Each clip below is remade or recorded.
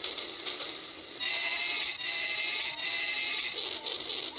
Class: recorded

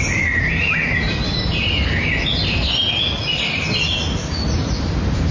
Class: recorded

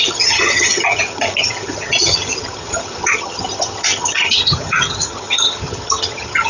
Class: remade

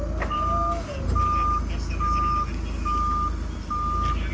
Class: recorded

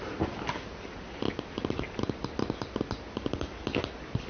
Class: recorded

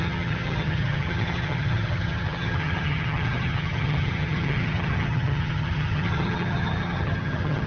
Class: remade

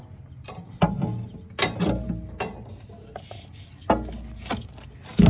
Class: recorded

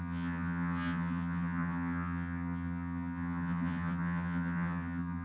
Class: remade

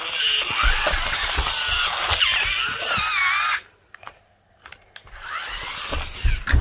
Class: recorded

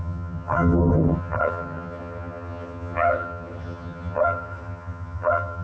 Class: remade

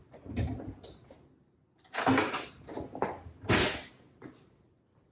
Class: recorded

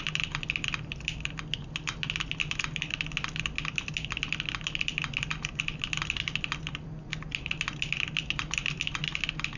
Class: recorded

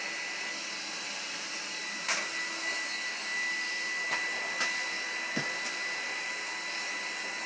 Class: recorded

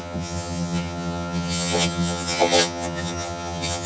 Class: remade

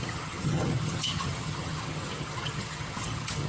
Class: remade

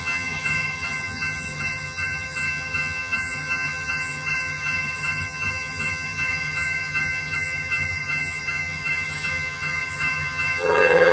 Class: remade